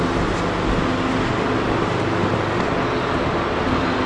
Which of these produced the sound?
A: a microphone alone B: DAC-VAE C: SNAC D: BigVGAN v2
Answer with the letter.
A